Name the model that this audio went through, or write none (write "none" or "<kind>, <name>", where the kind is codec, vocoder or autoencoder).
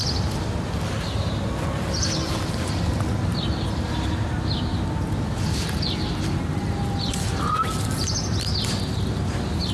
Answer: none